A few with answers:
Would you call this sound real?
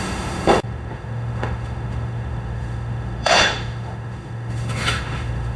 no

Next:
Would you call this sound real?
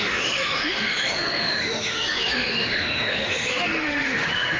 no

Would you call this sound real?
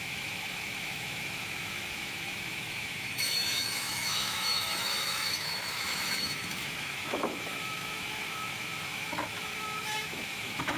no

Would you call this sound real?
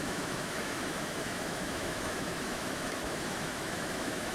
no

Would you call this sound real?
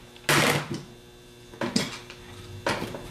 yes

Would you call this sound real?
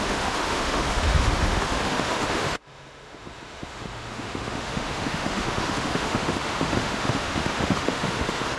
no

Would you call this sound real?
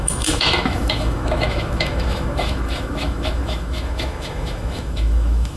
no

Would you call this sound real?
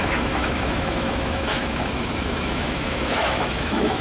no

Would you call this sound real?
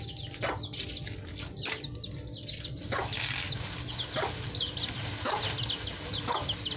yes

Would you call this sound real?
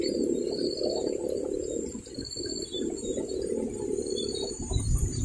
yes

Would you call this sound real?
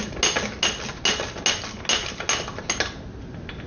yes